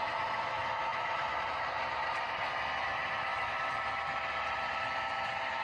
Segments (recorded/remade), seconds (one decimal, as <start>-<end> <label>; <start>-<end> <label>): 0.0-0.9 recorded; 0.9-2.4 remade; 2.4-3.3 recorded; 3.3-4.8 remade; 4.8-5.6 recorded